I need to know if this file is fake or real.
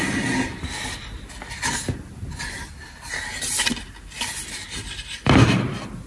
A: real